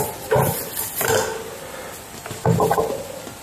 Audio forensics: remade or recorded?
recorded